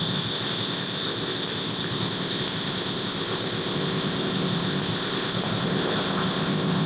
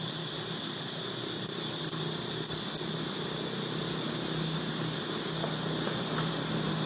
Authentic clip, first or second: second